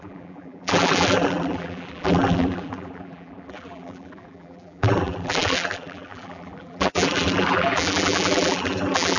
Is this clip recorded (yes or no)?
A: no